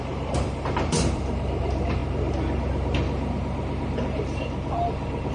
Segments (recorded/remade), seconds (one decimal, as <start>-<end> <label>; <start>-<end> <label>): 0.0-2.0 remade; 2.0-5.3 recorded